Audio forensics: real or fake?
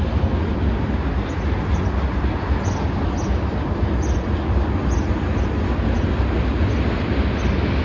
real